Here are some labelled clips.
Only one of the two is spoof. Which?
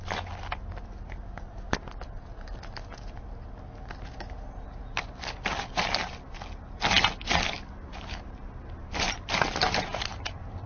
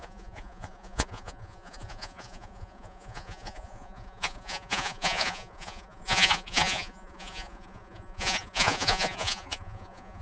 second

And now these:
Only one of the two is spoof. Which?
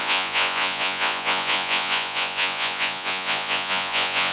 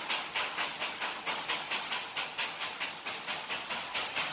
first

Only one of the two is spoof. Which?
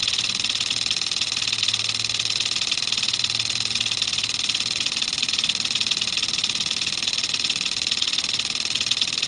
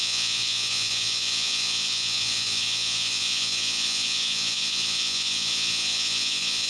second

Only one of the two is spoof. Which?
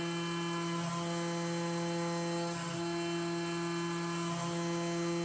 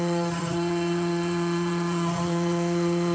second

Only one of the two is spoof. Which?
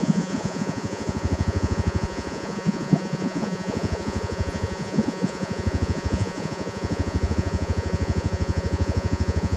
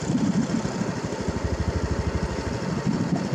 first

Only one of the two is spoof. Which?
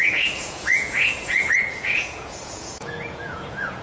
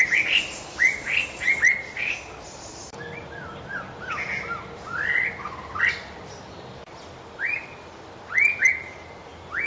first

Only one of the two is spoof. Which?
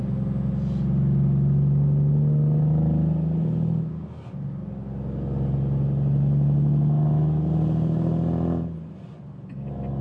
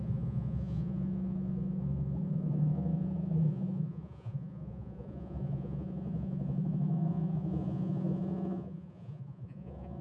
second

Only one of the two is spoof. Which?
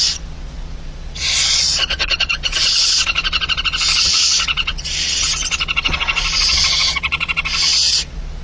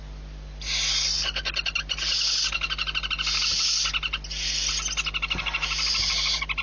first